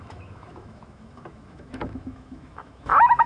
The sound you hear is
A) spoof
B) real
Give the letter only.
A